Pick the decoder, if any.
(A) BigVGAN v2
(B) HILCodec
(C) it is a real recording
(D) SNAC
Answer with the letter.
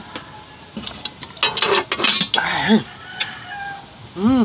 C